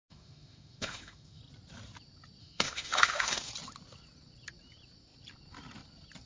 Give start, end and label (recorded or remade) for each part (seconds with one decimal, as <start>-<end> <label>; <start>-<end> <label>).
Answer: 0.0-1.4 remade; 1.4-2.4 recorded; 2.4-3.5 remade; 3.5-6.3 recorded